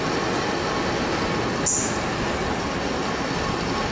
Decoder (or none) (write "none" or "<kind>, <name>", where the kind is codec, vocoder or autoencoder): none